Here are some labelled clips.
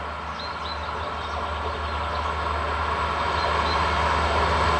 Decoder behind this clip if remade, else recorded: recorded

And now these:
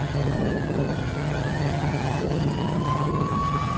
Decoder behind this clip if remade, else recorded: remade, vocoder, HiFi-GAN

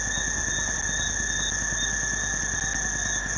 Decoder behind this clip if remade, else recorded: recorded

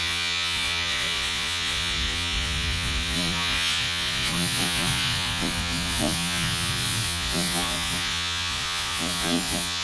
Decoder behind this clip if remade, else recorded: remade, vocoder, Vocos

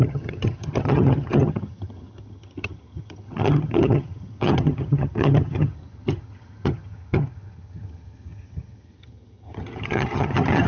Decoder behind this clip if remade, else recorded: remade, vocoder, HiFi-GAN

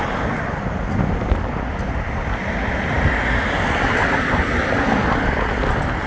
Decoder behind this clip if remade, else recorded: recorded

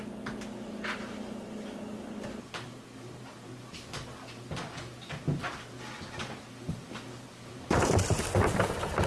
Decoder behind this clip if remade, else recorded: recorded